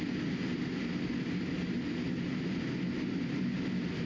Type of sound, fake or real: real